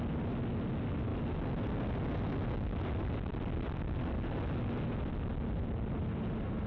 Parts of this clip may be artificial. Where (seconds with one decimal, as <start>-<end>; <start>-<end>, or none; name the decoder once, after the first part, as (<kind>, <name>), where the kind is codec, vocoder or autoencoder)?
none